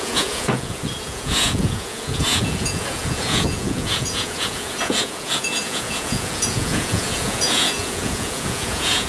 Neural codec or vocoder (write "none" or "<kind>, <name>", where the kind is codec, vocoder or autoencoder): vocoder, Vocos